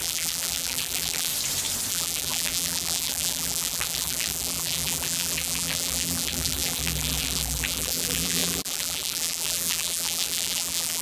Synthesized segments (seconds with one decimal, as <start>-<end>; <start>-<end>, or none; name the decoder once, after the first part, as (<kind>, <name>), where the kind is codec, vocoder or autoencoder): 0.0-1.3 (vocoder, BigVGAN v2); 1.9-11.0